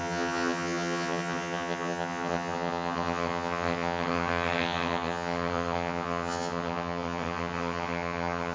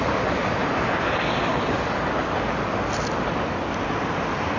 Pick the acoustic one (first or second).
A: second